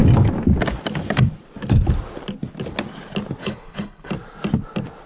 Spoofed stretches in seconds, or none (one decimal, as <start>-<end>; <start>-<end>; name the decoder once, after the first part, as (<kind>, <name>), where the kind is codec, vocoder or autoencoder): 3.4-4.1 (codec, HILCodec)